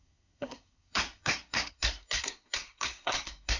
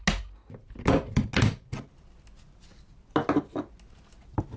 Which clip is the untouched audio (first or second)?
second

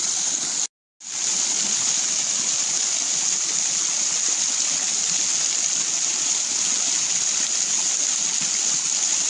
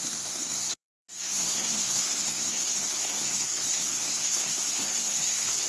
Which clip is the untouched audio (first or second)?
first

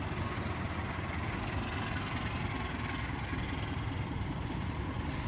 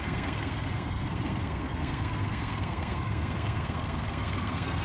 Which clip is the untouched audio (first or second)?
first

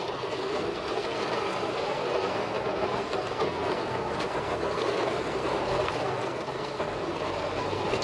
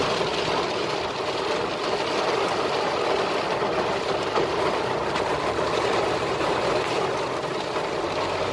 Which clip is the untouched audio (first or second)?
second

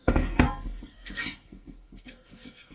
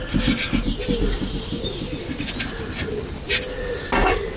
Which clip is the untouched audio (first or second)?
second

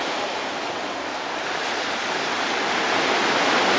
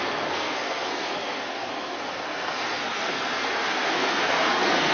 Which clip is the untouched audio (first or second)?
first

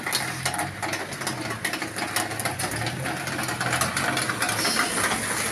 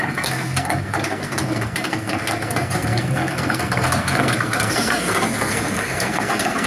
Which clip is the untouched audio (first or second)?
first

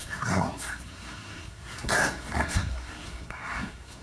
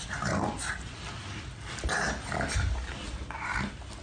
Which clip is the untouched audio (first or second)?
second